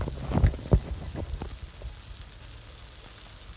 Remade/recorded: recorded